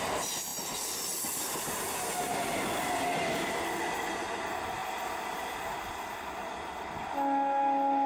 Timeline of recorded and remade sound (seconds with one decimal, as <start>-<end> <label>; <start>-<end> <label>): 0.0-8.1 recorded